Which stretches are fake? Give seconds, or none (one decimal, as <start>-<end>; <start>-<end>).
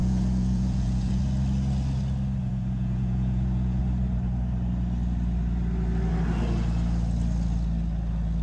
0.0-1.2; 2.4-3.8